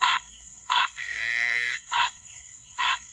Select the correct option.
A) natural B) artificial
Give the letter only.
B